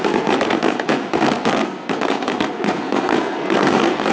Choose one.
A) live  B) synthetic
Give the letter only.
B